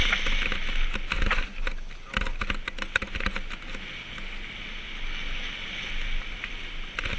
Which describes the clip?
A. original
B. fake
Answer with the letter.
A